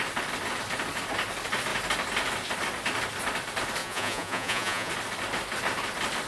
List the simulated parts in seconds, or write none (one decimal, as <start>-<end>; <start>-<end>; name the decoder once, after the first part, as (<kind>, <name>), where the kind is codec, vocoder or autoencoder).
3.8-4.9 (vocoder, Vocos)